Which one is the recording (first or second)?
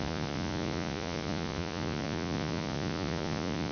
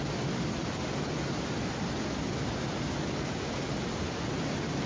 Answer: second